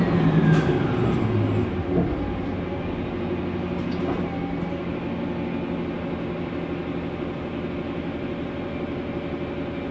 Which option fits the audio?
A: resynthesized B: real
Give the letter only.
B